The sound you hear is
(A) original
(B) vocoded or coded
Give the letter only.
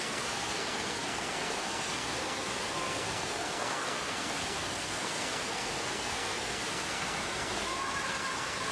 B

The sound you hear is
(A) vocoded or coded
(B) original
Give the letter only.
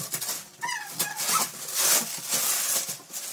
B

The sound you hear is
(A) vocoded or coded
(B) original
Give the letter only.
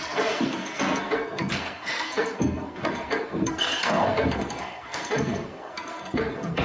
A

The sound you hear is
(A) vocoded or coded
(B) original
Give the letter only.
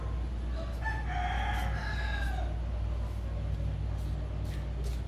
B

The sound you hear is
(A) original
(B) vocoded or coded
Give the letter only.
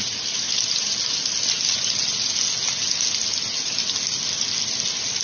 A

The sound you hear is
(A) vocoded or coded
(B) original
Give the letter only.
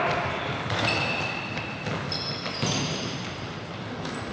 B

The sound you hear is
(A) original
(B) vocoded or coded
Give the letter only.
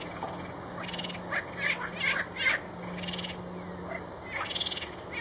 A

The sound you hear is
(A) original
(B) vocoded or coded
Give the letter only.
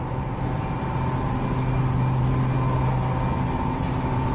A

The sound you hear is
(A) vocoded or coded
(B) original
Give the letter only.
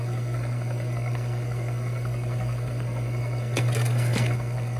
A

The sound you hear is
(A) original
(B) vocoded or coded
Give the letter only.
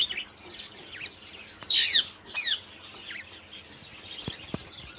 A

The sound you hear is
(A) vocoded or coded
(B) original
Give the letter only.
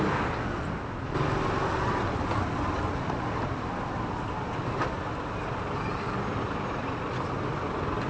B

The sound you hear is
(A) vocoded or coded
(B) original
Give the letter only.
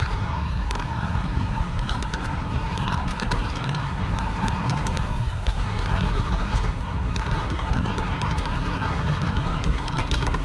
A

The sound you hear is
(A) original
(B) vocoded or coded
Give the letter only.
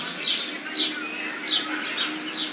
A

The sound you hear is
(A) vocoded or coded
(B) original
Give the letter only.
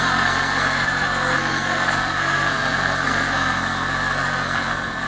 A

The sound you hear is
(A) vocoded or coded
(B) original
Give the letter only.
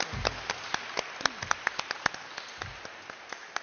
B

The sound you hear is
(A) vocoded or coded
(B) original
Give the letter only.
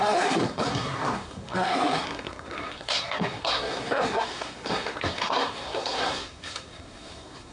A